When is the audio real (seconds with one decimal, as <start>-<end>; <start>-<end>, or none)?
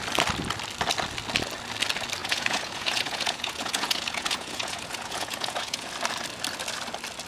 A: 0.0-2.2; 5.9-7.3